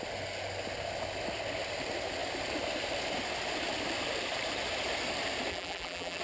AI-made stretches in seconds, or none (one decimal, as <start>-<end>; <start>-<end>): 5.5-6.2